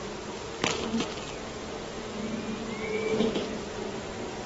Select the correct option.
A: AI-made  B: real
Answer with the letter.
B